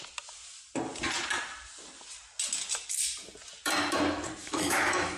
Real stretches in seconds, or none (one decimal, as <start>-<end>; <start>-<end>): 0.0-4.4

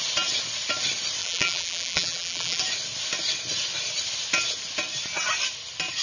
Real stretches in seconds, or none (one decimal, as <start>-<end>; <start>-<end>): 0.0-1.2; 2.6-6.0

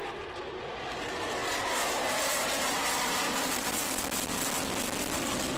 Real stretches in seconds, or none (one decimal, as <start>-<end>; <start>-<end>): 0.0-5.6

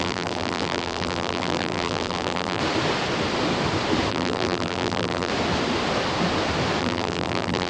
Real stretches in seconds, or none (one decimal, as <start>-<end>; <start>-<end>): 2.6-4.1; 5.3-6.8